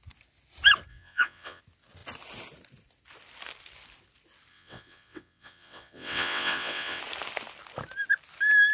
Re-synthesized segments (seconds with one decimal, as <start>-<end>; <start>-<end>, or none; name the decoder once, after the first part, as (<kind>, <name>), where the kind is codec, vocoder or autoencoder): 0.9-1.6 (vocoder, WaveNeXt); 4.5-7.0

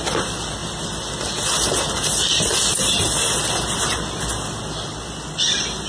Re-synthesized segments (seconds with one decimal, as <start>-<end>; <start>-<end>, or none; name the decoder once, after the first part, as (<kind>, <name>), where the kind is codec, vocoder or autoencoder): none

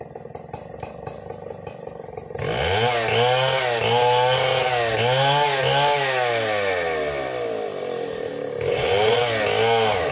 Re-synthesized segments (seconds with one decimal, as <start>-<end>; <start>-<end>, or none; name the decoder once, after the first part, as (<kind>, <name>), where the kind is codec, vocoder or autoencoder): 8.7-9.2 (vocoder, WaveNeXt)

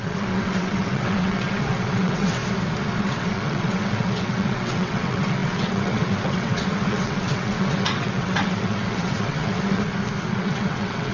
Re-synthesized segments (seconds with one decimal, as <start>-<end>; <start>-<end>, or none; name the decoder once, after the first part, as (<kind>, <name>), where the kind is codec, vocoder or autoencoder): 0.0-2.4 (vocoder, WaveNeXt); 3.0-9.8; 10.3-11.1

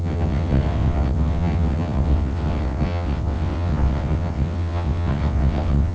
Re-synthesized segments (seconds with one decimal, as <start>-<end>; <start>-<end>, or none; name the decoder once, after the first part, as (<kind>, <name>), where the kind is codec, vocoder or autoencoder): 0.0-5.9 (vocoder, WaveNeXt)

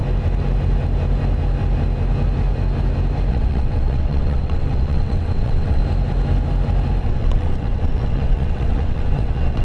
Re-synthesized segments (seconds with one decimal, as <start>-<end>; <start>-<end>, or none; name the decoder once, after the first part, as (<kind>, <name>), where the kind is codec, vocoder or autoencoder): 3.3-5.8 (vocoder, WaveNeXt); 7.0-9.6

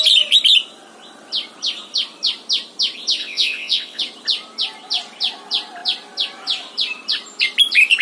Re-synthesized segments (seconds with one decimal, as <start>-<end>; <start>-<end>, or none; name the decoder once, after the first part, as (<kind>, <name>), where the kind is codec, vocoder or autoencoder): 3.2-4.0 (vocoder, WaveNeXt)